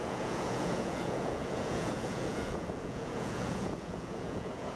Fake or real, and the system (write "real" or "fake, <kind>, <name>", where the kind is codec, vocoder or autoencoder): fake, vocoder, Vocos